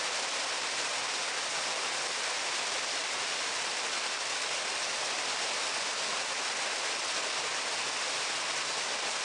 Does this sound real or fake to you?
real